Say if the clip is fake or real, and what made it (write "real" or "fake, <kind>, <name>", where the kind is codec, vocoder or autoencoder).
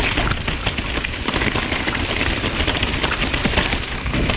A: real